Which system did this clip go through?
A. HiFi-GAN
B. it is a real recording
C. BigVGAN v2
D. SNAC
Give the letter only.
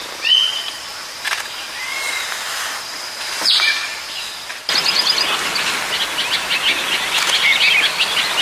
B